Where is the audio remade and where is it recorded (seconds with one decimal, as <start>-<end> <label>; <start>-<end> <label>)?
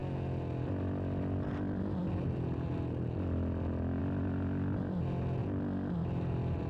0.0-6.7 recorded